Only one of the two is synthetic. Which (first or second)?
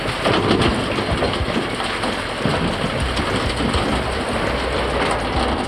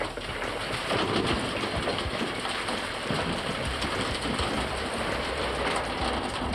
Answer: second